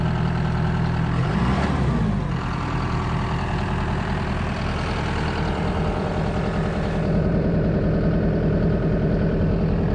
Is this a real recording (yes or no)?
no